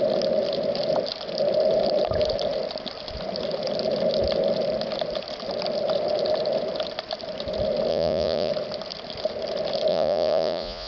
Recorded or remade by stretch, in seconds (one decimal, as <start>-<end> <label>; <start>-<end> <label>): 0.0-7.9 recorded; 7.9-8.5 remade; 8.5-9.9 recorded; 9.9-10.9 remade